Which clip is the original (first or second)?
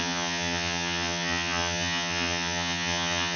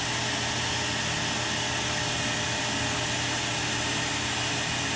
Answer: second